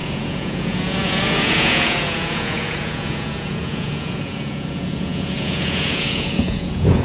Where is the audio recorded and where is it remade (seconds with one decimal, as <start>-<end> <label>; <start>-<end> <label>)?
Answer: 0.0-7.0 remade